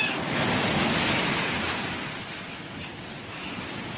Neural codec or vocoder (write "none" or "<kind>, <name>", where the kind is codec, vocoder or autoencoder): none